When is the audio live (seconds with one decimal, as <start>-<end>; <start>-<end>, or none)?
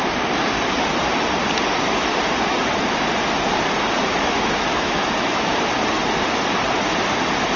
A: 0.0-4.0; 5.5-7.6